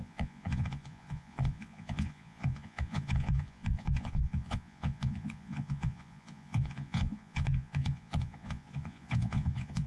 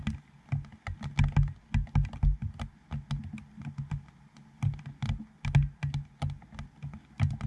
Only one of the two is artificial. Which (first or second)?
first